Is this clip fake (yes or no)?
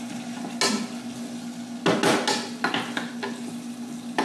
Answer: no